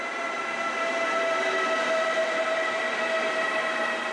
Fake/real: real